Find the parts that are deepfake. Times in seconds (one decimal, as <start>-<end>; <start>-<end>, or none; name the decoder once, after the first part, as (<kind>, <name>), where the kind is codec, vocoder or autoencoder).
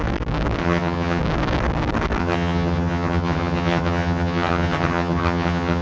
0.6-1.2 (vocoder, HiFi-GAN); 2.2-5.8